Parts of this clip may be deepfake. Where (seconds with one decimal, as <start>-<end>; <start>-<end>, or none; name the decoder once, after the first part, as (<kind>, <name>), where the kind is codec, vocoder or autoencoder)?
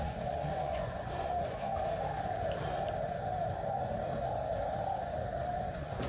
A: 0.0-1.7 (vocoder, Vocos); 5.4-6.1